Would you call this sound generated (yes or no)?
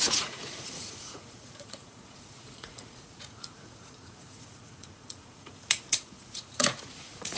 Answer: yes